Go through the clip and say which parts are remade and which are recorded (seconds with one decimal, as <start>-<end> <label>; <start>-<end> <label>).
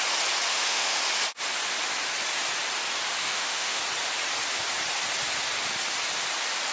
0.0-0.5 recorded; 0.5-1.0 remade; 1.0-3.2 recorded; 3.2-3.8 remade; 3.8-6.7 recorded